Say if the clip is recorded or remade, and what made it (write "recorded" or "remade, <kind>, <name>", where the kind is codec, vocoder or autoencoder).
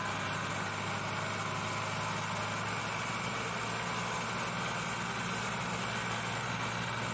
recorded